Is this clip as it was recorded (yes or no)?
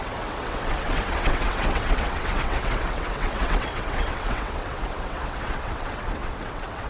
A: no